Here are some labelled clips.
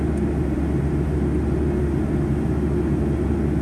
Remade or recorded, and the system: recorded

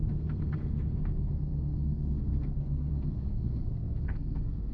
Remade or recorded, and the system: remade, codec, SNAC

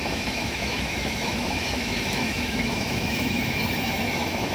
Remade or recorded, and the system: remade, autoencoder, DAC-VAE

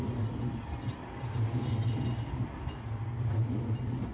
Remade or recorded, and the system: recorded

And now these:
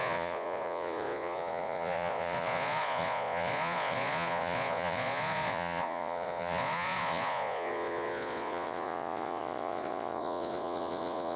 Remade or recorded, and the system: remade, vocoder, Vocos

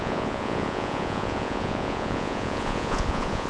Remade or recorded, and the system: remade, vocoder, Vocos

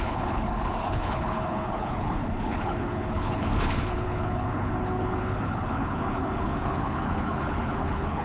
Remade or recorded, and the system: remade, codec, HILCodec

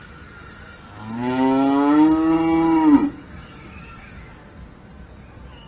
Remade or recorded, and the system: recorded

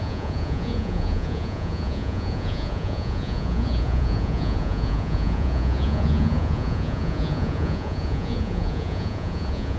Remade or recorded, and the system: remade, vocoder, Vocos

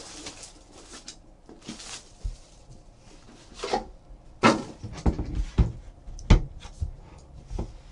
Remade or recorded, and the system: recorded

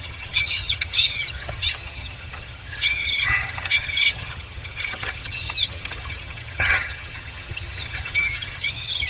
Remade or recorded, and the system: remade, vocoder, HiFi-GAN